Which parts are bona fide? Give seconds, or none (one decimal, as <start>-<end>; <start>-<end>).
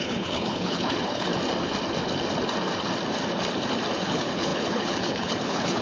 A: 1.3-4.0